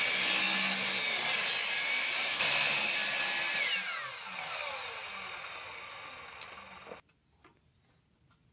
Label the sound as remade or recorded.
recorded